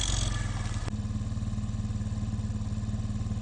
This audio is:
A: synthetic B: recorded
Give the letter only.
B